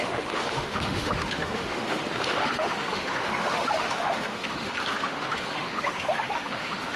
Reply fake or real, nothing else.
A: fake